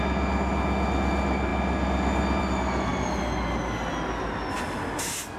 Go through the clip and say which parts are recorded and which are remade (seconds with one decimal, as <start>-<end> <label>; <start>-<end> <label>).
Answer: 0.0-5.4 recorded